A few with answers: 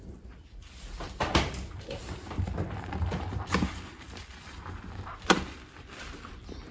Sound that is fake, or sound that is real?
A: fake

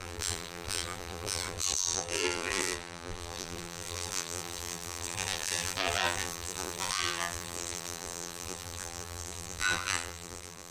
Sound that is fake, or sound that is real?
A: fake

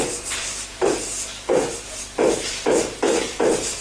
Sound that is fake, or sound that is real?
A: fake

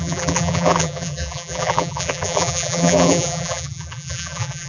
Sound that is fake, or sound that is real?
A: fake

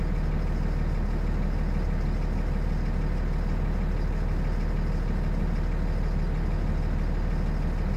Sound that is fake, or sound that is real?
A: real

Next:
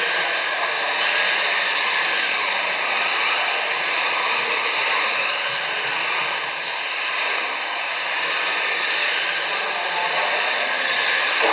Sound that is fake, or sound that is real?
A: real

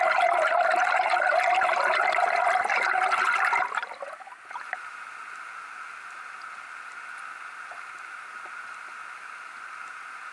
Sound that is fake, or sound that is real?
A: real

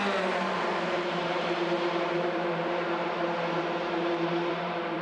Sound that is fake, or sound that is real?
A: fake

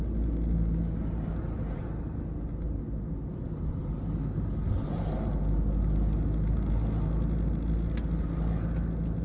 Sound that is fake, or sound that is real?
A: real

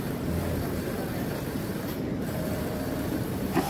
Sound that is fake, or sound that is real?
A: fake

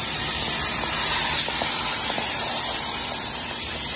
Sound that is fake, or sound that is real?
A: fake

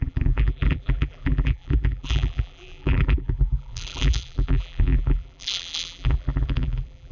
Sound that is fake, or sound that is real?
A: fake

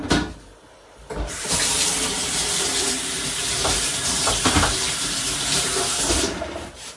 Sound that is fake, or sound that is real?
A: fake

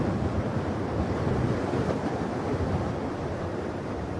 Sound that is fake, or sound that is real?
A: fake